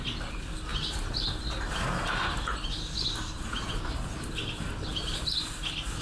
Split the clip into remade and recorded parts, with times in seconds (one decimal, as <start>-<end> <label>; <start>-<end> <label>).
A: 0.0-6.0 recorded